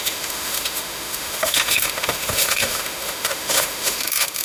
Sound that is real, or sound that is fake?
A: fake